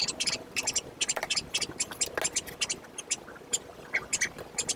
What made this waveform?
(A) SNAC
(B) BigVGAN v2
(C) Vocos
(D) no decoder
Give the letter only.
D